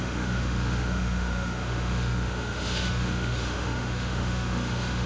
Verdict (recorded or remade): remade